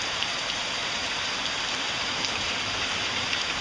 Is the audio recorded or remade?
remade